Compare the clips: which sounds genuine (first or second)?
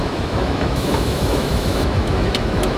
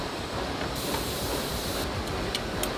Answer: second